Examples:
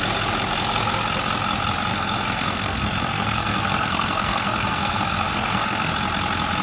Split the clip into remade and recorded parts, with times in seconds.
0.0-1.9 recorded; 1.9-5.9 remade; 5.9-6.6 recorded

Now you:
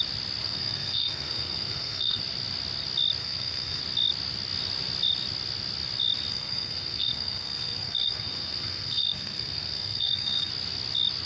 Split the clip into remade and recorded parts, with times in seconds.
0.0-0.4 recorded; 0.4-2.2 remade; 2.2-3.2 recorded; 3.2-3.8 remade; 3.8-6.3 recorded; 6.3-10.5 remade; 10.5-11.3 recorded

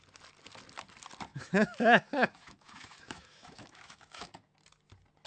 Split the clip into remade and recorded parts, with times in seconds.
0.0-1.3 recorded; 1.3-4.5 remade; 4.5-5.3 recorded

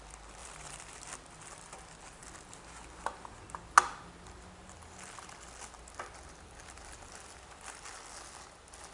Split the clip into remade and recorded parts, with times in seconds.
0.0-0.4 recorded; 0.4-0.9 remade; 0.9-8.9 recorded

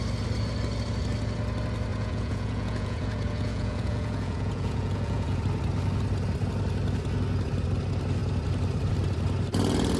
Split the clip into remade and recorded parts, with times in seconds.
0.0-1.9 recorded; 1.9-5.4 remade; 5.4-10.0 recorded

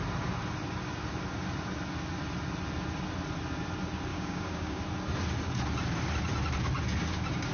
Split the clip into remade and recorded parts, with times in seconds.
0.0-4.1 recorded; 4.1-4.8 remade; 4.8-7.5 recorded

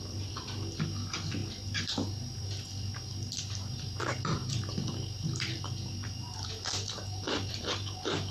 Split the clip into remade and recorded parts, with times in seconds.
0.0-8.3 remade

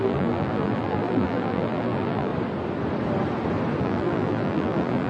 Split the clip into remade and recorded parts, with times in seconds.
0.0-2.3 remade; 2.3-3.8 recorded; 3.8-5.1 remade